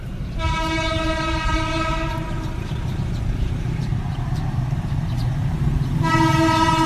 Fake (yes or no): yes